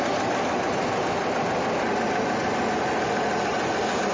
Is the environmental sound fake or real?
real